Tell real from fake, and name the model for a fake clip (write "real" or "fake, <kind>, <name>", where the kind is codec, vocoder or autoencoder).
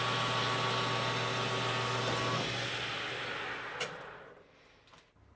real